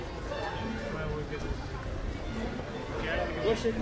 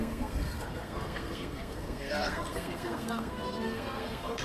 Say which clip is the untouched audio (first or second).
first